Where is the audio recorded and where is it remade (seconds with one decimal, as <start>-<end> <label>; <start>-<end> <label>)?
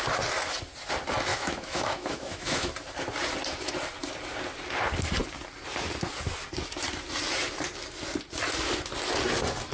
0.0-1.3 recorded; 1.3-2.7 remade; 2.7-9.7 recorded